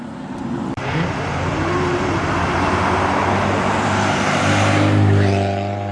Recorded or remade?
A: remade